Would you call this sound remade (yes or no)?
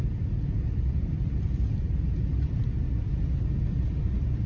no